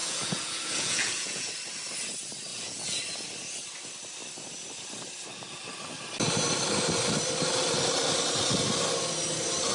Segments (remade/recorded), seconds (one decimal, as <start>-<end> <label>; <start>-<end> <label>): 0.0-1.5 remade; 1.5-2.5 recorded; 2.5-3.0 remade; 3.0-9.7 recorded